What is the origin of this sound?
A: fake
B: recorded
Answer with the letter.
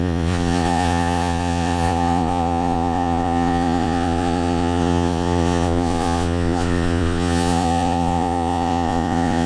A